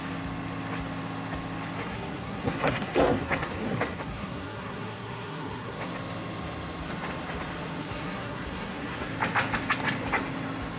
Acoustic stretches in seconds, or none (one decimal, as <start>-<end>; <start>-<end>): 0.0-1.8; 5.9-7.8; 9.1-10.8